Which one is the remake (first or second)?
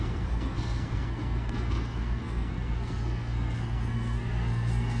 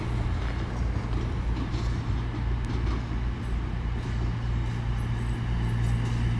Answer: first